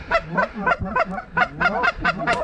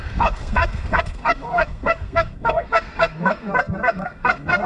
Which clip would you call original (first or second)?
first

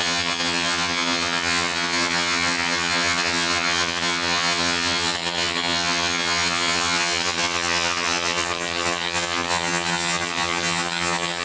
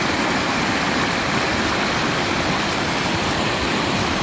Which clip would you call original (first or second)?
second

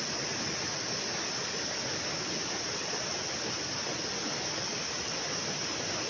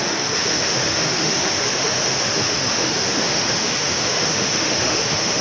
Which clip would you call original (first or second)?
first